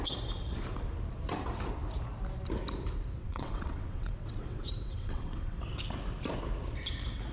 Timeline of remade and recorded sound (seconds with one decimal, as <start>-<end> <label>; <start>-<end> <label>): 0.0-3.2 recorded; 3.2-5.6 remade; 5.6-7.3 recorded